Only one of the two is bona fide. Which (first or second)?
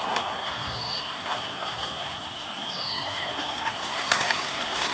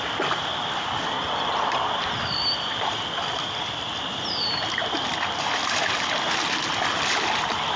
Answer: second